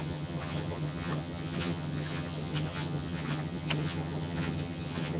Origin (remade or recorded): remade